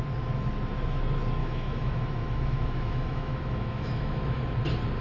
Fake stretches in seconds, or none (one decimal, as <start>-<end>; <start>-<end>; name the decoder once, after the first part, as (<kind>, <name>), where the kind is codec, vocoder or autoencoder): 1.4-4.4 (autoencoder, DAC-VAE)